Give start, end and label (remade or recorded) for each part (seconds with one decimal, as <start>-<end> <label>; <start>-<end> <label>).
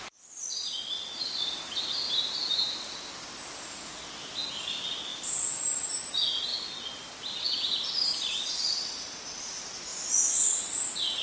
0.0-5.1 recorded; 5.1-6.0 remade; 6.0-11.2 recorded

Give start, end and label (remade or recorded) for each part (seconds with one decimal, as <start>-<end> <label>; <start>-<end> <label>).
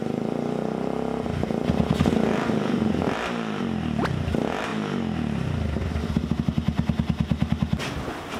0.0-8.4 recorded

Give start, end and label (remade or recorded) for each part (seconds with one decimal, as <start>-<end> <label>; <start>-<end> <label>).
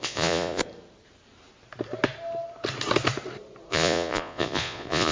0.0-0.6 remade; 0.6-3.7 recorded; 3.7-5.1 remade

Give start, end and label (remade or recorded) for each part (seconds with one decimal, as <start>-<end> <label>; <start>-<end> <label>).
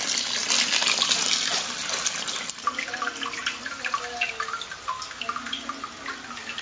0.0-6.6 recorded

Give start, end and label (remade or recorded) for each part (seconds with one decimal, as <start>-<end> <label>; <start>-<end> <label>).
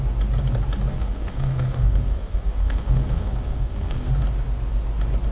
0.0-0.9 recorded; 0.9-4.1 remade; 4.1-5.3 recorded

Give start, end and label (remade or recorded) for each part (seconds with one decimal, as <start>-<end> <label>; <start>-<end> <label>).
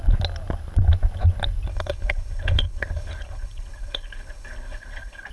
0.0-1.7 recorded; 1.7-5.3 remade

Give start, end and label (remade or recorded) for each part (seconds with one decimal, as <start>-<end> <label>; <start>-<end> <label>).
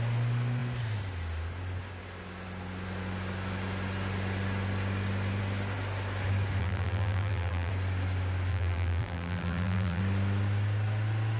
0.0-6.6 recorded; 6.6-7.7 remade; 7.7-8.5 recorded; 8.5-10.0 remade; 10.0-11.4 recorded